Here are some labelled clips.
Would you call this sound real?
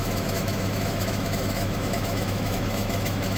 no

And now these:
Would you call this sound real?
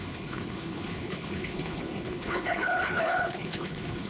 no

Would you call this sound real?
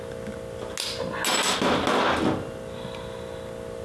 yes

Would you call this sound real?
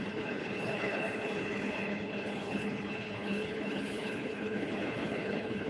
no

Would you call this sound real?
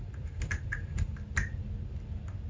yes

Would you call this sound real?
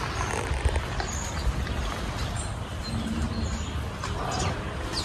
yes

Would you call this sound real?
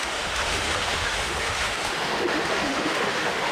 no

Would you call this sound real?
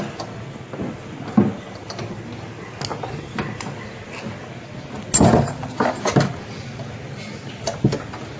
yes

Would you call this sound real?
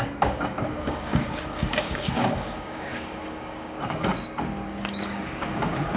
no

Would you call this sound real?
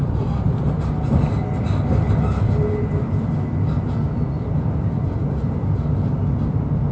yes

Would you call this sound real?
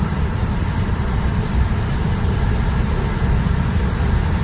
no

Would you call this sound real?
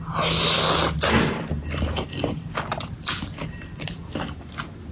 yes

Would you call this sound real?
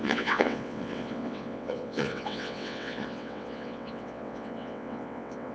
no